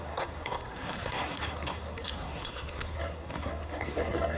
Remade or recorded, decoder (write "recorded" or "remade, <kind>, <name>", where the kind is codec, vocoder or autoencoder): remade, codec, SNAC